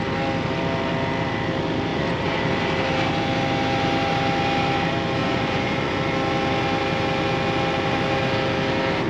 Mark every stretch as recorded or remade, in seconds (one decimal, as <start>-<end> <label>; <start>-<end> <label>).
0.0-1.9 recorded; 1.9-2.5 remade; 2.5-5.2 recorded; 5.2-6.0 remade; 6.0-9.1 recorded